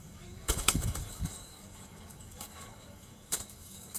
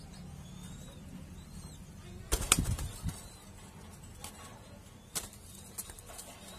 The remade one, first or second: first